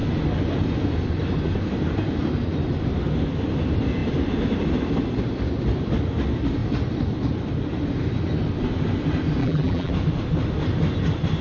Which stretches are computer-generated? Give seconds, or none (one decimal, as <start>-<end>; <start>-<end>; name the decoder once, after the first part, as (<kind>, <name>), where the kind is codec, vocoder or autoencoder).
9.4-9.9 (vocoder, BigVGAN v2)